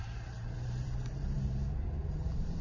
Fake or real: fake